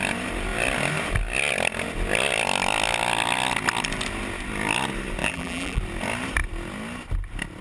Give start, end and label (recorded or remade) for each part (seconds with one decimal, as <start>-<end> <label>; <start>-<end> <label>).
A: 0.0-5.2 recorded; 5.2-5.8 remade; 5.8-7.6 recorded